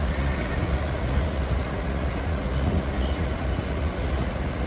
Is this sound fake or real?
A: fake